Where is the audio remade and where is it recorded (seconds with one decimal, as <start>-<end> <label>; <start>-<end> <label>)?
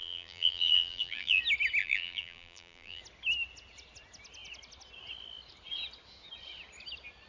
0.0-1.4 remade; 1.4-1.8 recorded; 1.8-3.0 remade; 3.0-7.3 recorded